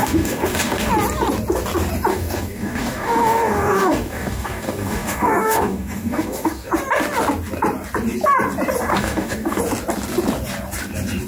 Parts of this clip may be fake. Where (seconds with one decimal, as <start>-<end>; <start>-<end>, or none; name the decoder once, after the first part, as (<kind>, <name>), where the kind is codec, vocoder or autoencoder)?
0.0-0.9 (codec, DAC); 2.1-6.7; 8.9-9.6